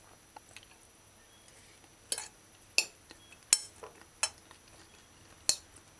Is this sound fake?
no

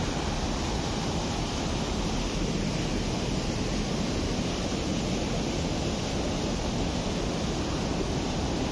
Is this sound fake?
no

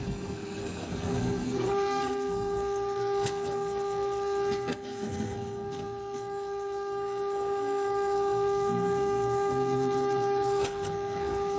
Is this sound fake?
yes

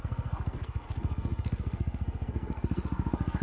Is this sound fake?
yes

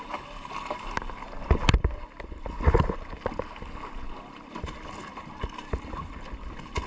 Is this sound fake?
no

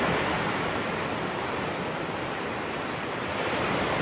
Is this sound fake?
yes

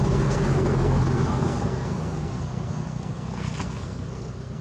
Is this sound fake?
yes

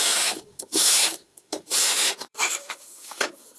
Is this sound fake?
yes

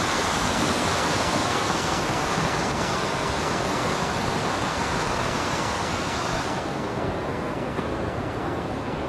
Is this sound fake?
yes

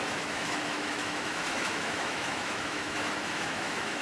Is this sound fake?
yes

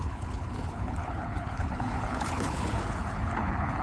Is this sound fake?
yes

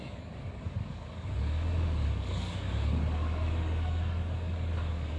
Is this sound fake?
yes